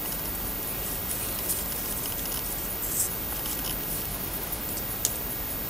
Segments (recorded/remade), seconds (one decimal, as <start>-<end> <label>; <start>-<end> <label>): 0.0-4.1 recorded; 4.1-4.6 remade; 4.6-5.7 recorded